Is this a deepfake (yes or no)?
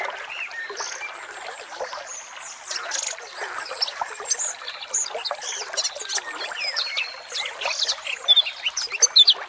no